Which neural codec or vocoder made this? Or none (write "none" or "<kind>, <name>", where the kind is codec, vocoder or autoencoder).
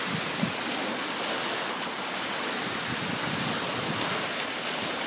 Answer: vocoder, BigVGAN v2